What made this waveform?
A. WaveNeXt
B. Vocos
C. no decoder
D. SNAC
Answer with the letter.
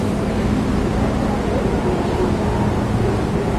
C